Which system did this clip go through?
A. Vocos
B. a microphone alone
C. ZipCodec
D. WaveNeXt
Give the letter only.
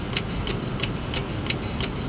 B